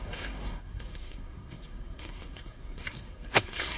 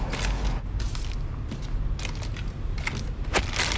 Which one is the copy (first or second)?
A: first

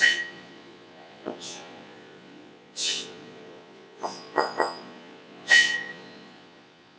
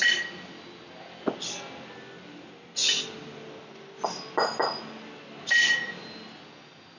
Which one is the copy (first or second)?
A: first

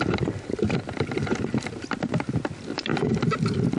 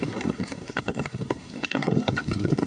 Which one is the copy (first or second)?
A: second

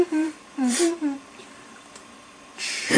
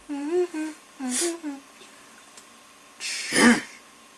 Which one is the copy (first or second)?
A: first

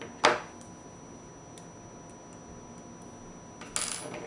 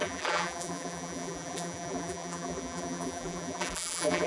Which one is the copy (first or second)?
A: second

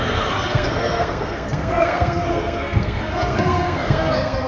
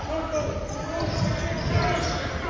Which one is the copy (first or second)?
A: first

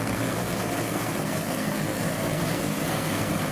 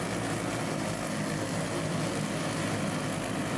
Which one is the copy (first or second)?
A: first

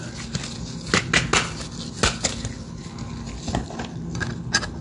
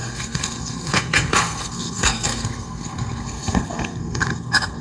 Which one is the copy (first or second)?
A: second